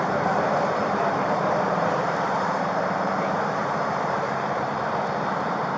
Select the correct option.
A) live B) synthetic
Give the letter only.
B